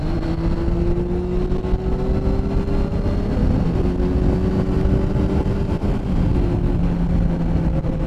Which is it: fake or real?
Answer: real